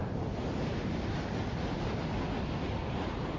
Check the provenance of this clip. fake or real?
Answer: real